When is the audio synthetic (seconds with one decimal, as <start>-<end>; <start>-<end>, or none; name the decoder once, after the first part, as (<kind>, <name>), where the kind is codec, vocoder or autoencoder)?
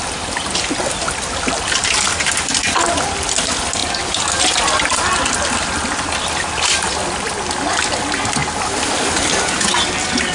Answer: none